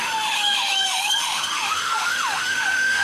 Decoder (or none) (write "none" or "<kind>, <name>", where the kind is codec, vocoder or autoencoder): autoencoder, DAC-VAE